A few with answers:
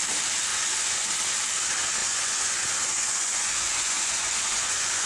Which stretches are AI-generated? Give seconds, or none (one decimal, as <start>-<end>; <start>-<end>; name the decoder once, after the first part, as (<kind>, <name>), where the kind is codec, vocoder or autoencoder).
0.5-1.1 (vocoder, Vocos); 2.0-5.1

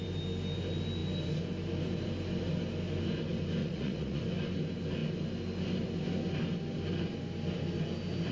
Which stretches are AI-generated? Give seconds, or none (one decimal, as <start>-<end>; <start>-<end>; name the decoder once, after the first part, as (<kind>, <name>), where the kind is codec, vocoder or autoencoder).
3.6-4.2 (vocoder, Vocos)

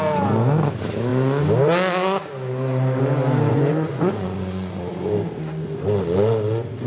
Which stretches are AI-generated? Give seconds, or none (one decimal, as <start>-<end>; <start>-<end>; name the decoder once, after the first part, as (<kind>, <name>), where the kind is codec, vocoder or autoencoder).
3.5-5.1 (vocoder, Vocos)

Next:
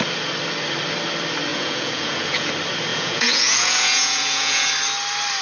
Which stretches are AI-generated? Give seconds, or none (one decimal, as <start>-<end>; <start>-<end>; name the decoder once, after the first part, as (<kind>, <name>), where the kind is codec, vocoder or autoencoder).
1.5-2.5 (vocoder, Vocos); 2.9-4.7